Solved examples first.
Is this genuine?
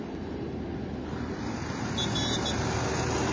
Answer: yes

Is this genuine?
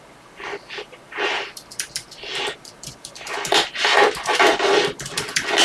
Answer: no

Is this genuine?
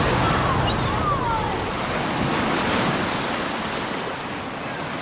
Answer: yes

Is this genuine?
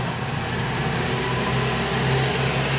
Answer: yes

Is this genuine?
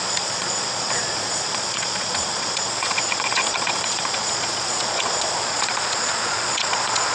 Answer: no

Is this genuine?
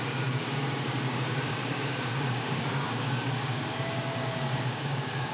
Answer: no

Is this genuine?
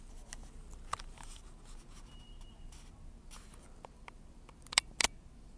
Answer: yes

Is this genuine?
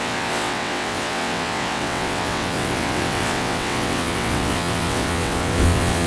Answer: no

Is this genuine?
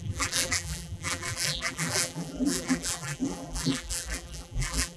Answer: no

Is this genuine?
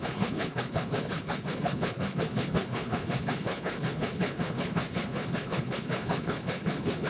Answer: no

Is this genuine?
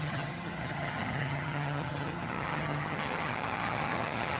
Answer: no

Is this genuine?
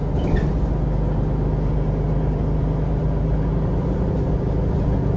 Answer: yes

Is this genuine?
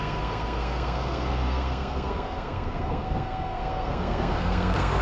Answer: no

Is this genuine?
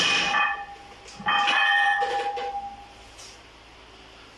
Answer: yes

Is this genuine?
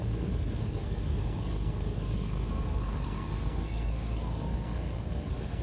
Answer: no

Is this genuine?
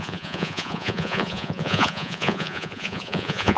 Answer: no